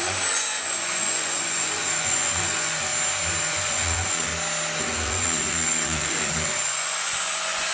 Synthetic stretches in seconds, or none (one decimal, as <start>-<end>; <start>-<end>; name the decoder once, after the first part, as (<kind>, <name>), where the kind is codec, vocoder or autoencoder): 0.0-2.9 (vocoder, Vocos); 3.4-4.3; 4.8-7.7